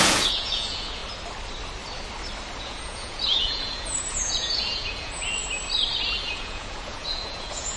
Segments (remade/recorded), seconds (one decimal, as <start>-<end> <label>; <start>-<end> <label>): 0.0-1.0 remade; 1.0-2.6 recorded; 2.6-5.4 remade; 5.4-6.2 recorded; 6.2-7.8 remade